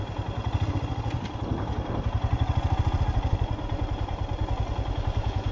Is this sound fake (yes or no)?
no